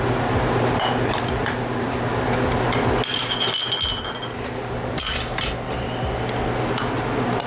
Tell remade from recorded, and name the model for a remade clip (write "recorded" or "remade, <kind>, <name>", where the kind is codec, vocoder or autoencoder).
recorded